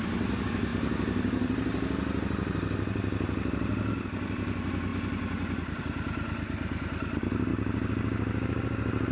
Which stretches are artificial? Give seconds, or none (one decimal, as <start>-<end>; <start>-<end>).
7.5-9.1